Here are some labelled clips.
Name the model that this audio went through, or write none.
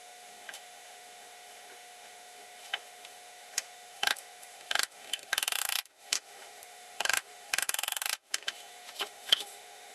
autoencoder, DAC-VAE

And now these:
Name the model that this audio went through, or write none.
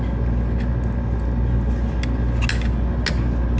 none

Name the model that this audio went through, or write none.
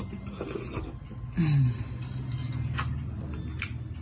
none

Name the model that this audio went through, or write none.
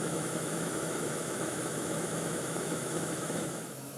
autoencoder, DAC-VAE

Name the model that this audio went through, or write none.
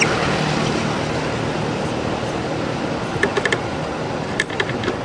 none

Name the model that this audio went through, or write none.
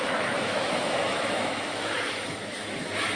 autoencoder, DAC-VAE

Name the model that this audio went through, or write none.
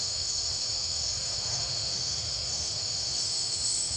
autoencoder, DAC-VAE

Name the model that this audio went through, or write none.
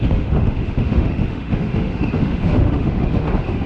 autoencoder, DAC-VAE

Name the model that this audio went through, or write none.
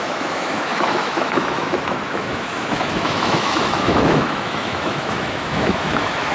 autoencoder, DAC-VAE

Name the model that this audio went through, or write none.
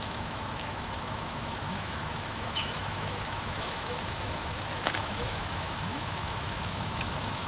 autoencoder, DAC-VAE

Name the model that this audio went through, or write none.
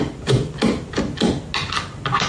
none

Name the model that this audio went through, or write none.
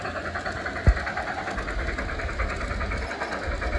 none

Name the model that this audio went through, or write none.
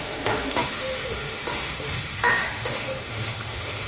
autoencoder, DAC-VAE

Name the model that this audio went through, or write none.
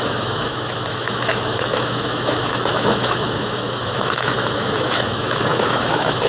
autoencoder, DAC-VAE